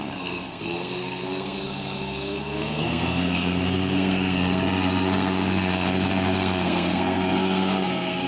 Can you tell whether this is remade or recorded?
remade